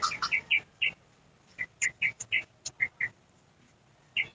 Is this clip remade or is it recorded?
recorded